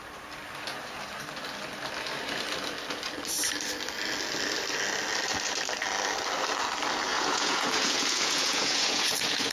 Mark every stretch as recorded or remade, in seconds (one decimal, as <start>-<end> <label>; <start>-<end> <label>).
0.0-7.1 recorded; 7.1-9.5 remade